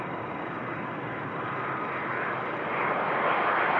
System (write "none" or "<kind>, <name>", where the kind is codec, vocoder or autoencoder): none